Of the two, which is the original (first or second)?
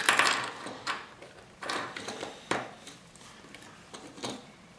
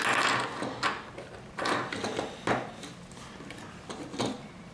second